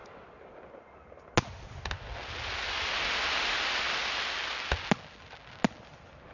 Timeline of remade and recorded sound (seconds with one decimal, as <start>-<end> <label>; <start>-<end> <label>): 0.0-6.3 recorded